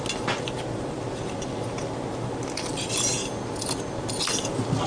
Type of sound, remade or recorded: recorded